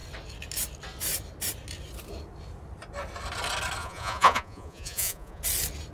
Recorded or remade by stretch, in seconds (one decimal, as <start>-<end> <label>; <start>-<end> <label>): 0.0-3.8 recorded; 3.8-5.4 remade; 5.4-5.9 recorded